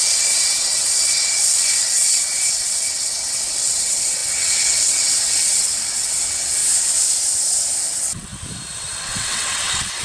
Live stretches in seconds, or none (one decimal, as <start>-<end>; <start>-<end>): 6.6-7.9; 8.3-9.0